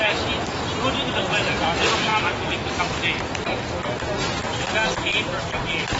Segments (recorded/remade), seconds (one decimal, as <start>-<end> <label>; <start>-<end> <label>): 0.0-6.0 recorded